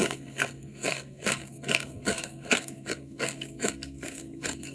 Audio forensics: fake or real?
fake